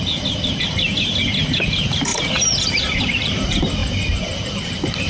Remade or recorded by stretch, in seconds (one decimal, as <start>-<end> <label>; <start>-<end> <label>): 0.0-5.1 recorded